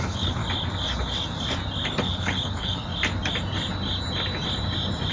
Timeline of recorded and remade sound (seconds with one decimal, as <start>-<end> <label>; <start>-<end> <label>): 0.0-0.4 remade; 0.4-2.0 recorded; 2.0-2.9 remade; 2.9-5.1 recorded